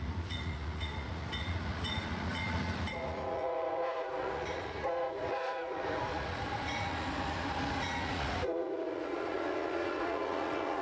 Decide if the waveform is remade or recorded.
remade